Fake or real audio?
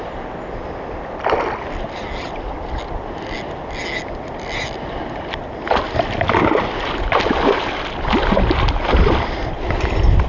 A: real